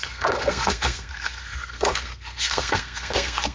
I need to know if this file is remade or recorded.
remade